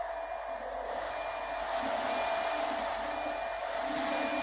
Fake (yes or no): no